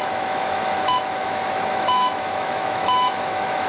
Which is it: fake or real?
fake